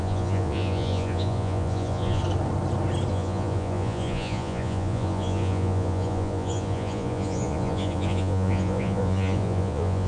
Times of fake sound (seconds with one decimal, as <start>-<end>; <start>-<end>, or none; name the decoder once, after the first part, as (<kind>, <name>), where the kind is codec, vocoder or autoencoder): 0.0-2.2 (vocoder, Vocos); 3.1-10.1